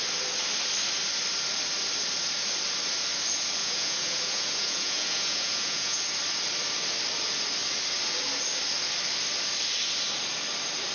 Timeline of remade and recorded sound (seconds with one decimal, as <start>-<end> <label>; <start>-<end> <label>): 0.0-3.6 recorded; 3.6-6.0 remade; 6.0-10.9 recorded